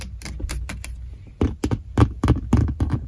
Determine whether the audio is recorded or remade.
recorded